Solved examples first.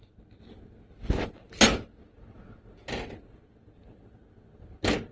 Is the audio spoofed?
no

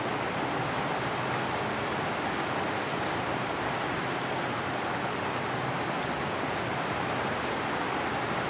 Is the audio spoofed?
no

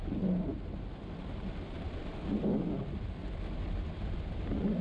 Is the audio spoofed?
no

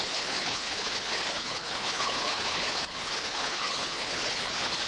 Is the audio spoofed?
yes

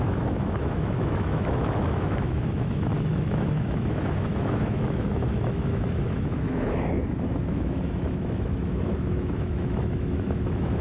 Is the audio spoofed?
yes